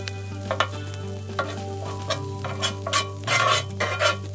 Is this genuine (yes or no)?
yes